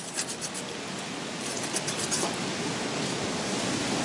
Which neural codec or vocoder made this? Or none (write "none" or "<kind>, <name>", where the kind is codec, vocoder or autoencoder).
none